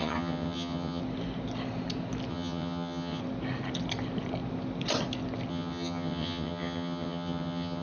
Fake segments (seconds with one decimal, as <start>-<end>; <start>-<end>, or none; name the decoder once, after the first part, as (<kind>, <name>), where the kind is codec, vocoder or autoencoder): 0.0-1.0 (vocoder, HiFi-GAN); 2.3-3.2; 5.5-7.8